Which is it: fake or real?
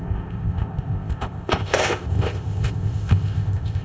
fake